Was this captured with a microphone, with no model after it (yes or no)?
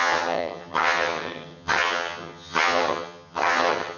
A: no